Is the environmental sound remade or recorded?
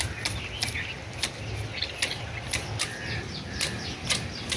recorded